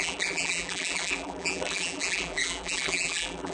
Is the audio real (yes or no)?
no